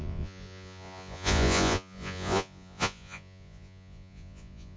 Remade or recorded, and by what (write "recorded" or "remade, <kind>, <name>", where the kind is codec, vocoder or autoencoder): remade, vocoder, Vocos